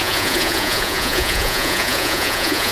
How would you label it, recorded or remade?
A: remade